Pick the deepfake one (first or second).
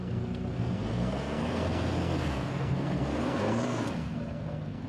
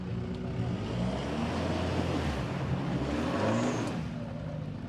first